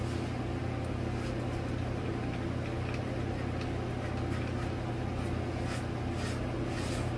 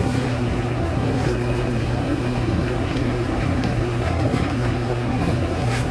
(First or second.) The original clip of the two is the first